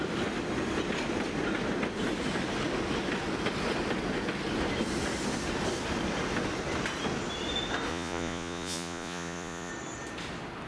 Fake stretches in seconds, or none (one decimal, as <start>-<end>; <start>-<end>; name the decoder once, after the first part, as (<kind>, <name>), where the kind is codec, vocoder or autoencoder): 7.9-9.7 (vocoder, Vocos)